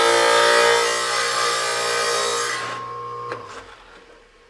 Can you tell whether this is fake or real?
real